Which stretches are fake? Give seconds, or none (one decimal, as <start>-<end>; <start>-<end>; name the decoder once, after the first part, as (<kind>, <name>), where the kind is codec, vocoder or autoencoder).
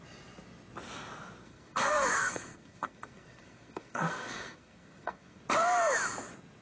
1.4-5.4 (codec, SNAC)